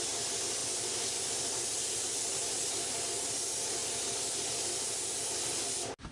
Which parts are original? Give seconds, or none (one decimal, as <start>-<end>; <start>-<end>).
0.0-0.6; 1.3-6.1